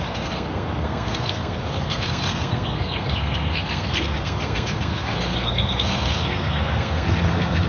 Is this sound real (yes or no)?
no